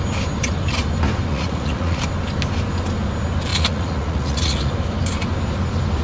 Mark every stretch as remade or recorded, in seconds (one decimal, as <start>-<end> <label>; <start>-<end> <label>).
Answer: 0.0-1.3 recorded; 1.3-2.0 remade; 2.0-3.5 recorded; 3.5-4.7 remade; 4.7-6.0 recorded